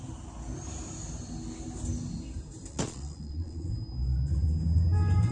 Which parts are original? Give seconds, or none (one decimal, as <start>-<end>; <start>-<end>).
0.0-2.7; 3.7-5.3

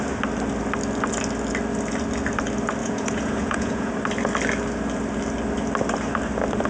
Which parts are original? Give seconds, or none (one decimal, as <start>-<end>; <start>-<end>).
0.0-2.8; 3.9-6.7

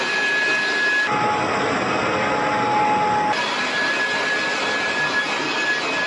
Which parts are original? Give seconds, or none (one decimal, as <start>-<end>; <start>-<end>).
0.0-6.1

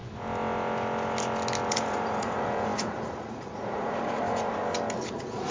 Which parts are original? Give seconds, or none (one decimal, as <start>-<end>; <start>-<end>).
0.0-1.7; 4.6-5.1